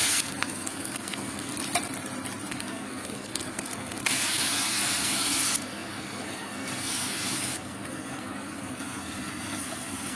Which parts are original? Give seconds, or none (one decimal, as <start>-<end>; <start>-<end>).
1.5-2.5